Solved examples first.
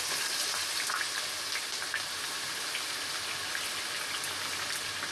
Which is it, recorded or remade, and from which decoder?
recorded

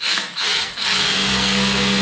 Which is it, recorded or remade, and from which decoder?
remade, codec, SNAC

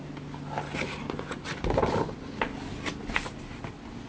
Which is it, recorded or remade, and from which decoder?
recorded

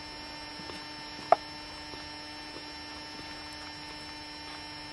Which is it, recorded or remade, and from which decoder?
recorded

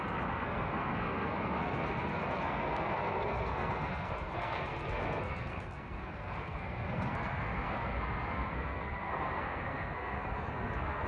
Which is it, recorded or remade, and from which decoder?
remade, codec, SNAC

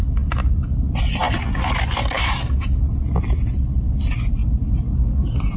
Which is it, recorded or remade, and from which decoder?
recorded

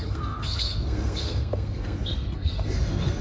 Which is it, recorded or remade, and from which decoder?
remade, codec, SNAC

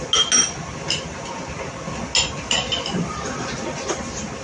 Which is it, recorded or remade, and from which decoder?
recorded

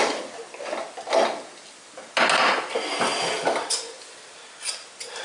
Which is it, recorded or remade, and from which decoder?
recorded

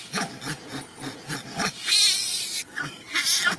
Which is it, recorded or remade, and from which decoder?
recorded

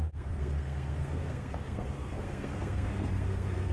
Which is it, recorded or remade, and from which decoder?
remade, codec, SNAC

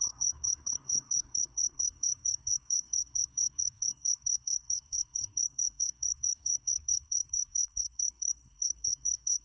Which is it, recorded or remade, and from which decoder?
remade, codec, SNAC